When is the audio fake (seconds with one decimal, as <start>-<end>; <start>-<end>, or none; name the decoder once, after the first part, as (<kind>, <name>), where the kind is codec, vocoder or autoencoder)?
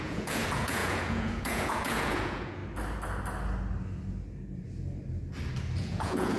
0.0-2.6 (vocoder, Vocos); 5.8-6.4